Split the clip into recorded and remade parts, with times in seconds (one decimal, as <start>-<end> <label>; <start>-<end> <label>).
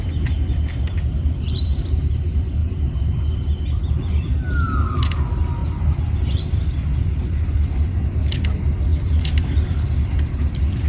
0.0-8.9 recorded; 8.9-9.9 remade; 9.9-10.9 recorded